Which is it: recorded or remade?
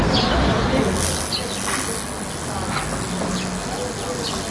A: recorded